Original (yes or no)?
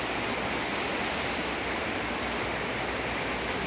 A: yes